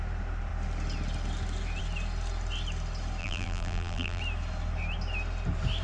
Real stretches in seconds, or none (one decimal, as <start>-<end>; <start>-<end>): 0.0-3.2; 4.2-5.8